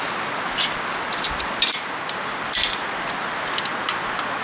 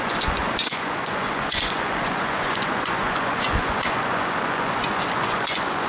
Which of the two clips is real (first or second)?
first